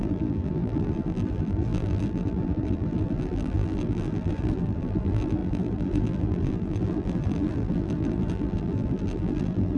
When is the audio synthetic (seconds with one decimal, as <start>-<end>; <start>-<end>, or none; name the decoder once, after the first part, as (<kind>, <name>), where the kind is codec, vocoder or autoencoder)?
0.0-9.8 (vocoder, BigVGAN v2)